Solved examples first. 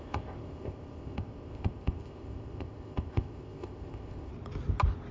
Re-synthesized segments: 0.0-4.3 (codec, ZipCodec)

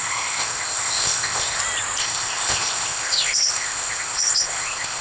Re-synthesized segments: 0.0-1.6 (codec, ZipCodec); 2.0-5.0

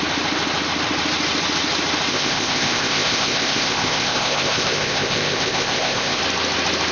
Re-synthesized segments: 2.1-6.2 (codec, ZipCodec)

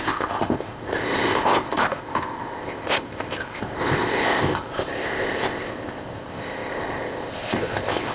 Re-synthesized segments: 0.0-8.1 (codec, ZipCodec)

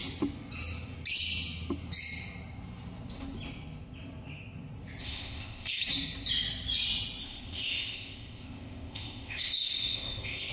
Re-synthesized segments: 5.0-5.8 (codec, ZipCodec); 7.2-10.5

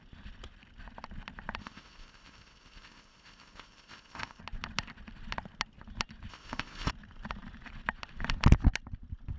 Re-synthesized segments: 1.6-4.4 (codec, ZipCodec); 6.3-6.9